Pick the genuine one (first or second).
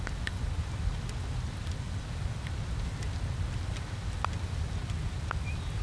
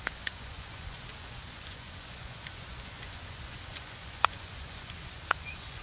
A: first